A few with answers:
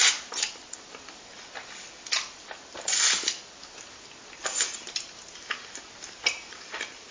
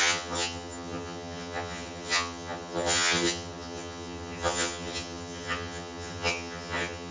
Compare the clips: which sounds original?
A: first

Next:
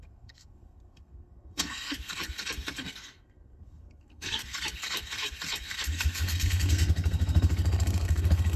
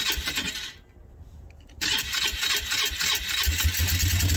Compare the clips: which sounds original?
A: second